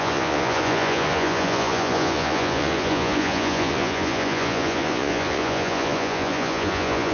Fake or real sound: fake